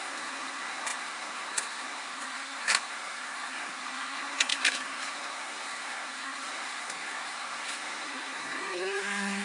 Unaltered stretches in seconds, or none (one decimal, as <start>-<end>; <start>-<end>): none